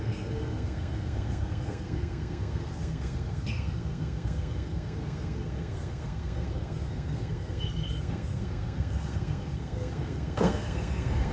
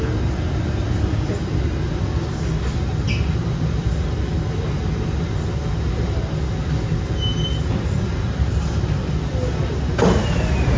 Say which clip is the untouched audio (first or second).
second